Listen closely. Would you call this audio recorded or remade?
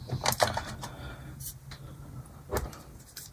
recorded